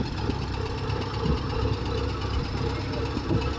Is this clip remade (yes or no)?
no